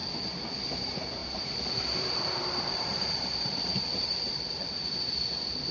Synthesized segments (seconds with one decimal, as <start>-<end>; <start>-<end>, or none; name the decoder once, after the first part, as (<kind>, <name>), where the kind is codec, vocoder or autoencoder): 0.5-5.7 (vocoder, BigVGAN v2)

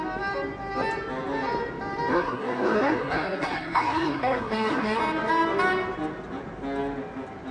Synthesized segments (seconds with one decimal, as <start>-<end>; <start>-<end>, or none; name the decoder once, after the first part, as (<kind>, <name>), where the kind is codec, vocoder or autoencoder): 2.1-5.0 (codec, SNAC)

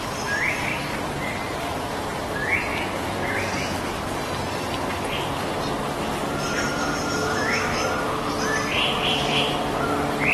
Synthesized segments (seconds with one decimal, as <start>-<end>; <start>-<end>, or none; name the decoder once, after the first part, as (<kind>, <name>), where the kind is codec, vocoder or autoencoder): 7.2-7.8 (autoencoder, DAC-VAE)

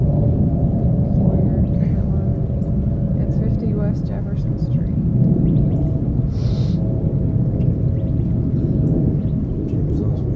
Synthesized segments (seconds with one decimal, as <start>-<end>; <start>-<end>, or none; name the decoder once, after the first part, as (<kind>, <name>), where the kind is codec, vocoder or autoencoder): none